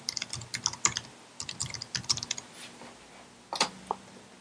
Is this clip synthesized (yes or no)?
no